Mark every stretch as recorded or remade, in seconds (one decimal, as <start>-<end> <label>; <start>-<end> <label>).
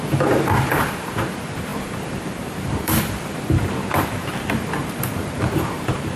0.0-6.2 remade